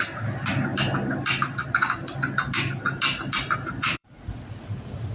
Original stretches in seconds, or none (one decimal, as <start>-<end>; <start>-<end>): 0.0-3.8